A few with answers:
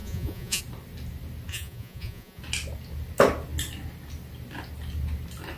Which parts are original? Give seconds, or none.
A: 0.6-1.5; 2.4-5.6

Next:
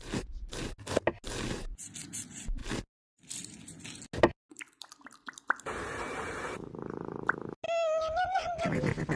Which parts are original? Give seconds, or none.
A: 0.0-9.2

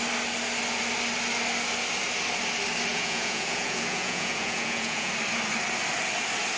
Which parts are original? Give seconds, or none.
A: 0.0-2.9; 5.1-6.6

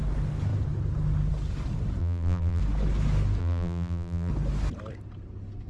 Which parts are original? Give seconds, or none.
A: 0.0-2.0; 2.6-3.4; 4.3-5.7